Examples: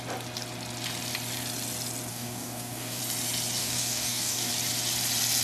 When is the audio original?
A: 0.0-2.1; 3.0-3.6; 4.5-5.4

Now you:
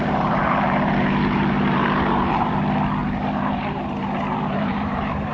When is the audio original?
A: 2.6-3.0

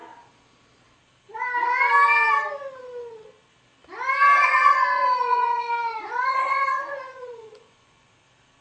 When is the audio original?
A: 0.0-4.4; 8.1-8.6

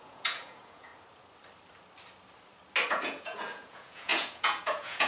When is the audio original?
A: 0.9-2.9

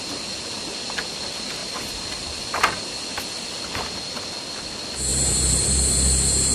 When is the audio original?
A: 0.0-5.1; 5.7-6.5

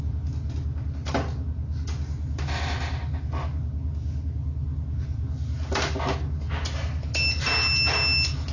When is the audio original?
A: 0.0-8.5

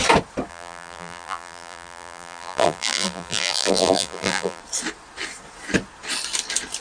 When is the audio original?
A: 0.0-0.5; 4.6-6.8

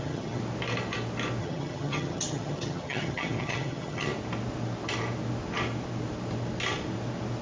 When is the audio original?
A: 0.4-1.4; 4.1-7.4